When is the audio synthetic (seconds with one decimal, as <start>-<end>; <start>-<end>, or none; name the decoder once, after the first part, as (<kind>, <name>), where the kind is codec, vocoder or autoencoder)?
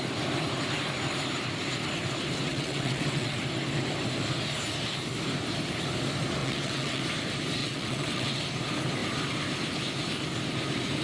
2.5-3.4 (vocoder, WaveNeXt); 6.4-7.0; 7.6-8.4